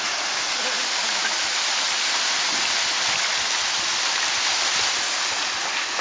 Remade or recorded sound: recorded